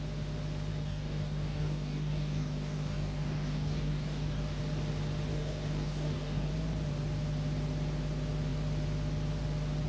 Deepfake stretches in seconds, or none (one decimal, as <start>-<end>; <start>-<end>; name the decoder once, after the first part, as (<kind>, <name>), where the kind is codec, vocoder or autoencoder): 0.7-4.6 (codec, DAC); 5.3-6.5